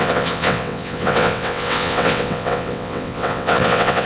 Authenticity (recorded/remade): remade